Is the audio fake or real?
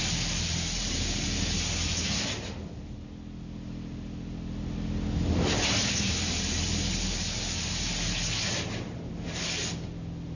real